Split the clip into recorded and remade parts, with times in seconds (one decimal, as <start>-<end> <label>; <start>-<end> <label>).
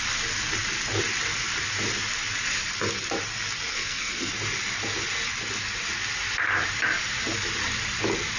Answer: 0.0-3.7 recorded; 3.7-4.3 remade; 4.3-8.4 recorded